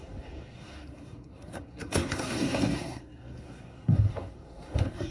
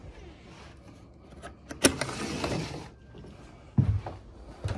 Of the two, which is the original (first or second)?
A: second